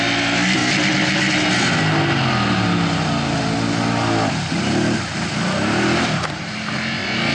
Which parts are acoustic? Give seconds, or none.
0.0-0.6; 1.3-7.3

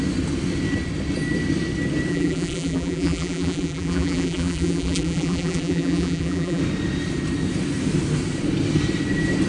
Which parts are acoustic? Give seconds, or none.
0.0-2.1; 6.6-9.5

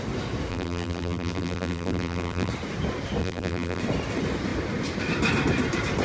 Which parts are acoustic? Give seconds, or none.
0.0-0.5; 2.5-3.2; 3.8-6.0

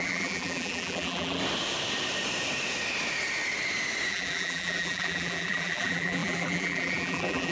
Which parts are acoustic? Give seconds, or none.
1.4-4.1

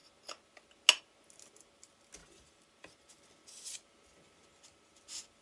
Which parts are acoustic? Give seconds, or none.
0.0-2.2; 3.2-5.4

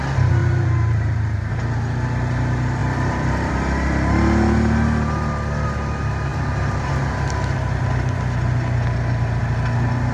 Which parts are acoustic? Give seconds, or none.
0.0-0.4; 1.5-2.8; 3.5-6.3; 6.9-10.1